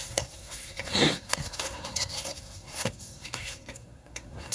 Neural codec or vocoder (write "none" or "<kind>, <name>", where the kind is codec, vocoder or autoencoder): codec, SNAC